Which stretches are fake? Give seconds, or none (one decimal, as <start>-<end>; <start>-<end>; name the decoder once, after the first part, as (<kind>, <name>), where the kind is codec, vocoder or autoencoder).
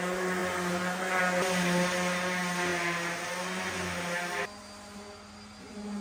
none